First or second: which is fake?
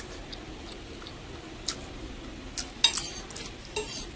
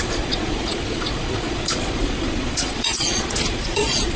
second